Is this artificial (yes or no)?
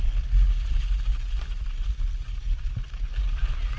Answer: no